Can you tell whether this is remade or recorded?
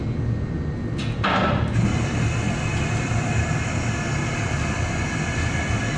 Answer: recorded